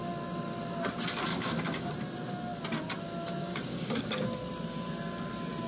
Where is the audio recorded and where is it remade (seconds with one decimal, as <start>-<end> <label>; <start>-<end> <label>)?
0.0-1.3 recorded; 1.3-1.9 remade; 1.9-3.4 recorded; 3.4-4.0 remade; 4.0-5.7 recorded